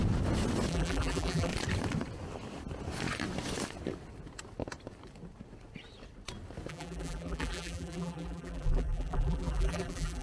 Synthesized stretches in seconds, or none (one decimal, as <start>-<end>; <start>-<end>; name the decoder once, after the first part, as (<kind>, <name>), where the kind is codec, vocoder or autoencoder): 0.7-1.5 (vocoder, BigVGAN v2); 6.7-10.2